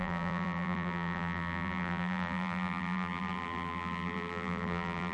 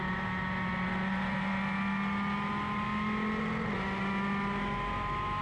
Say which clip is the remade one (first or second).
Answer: first